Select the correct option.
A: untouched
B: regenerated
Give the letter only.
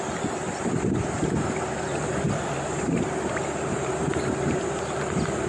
A